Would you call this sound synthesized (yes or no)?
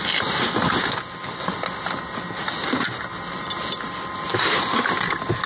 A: no